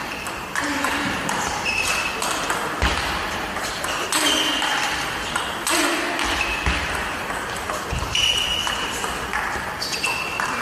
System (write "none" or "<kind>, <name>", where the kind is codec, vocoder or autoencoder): none